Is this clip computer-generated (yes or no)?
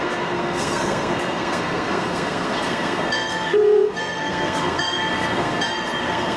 yes